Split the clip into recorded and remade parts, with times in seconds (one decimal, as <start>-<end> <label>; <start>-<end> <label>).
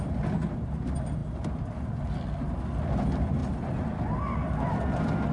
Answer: 0.0-3.4 recorded; 3.4-3.9 remade; 3.9-5.3 recorded